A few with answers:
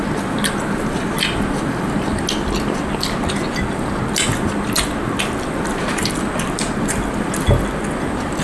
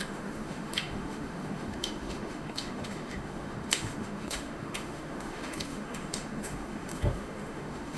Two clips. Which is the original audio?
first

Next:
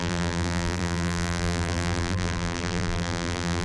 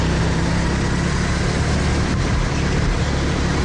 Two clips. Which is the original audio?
second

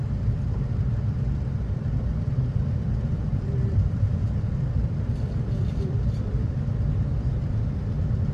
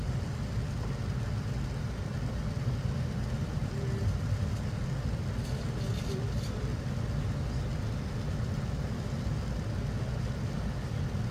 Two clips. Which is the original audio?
second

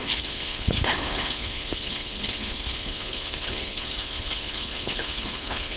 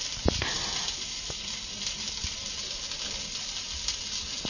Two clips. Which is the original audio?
second